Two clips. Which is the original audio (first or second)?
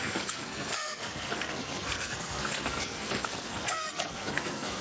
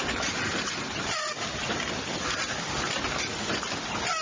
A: second